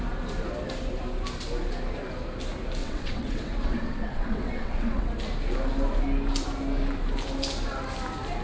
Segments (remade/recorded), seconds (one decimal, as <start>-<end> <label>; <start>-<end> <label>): 0.0-2.8 recorded; 2.8-5.1 remade; 5.1-8.4 recorded